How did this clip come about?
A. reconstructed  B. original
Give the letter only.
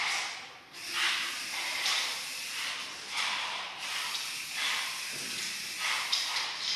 A